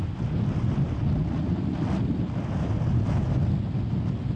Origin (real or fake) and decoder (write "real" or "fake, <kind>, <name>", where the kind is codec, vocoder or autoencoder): real